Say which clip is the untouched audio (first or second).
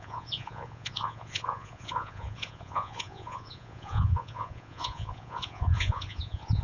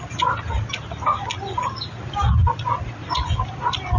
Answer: second